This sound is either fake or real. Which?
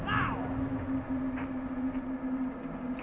real